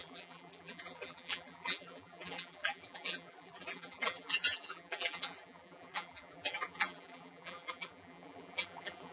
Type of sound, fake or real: fake